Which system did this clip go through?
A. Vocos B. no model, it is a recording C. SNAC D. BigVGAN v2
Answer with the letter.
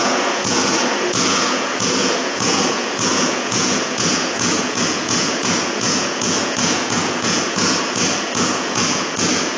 A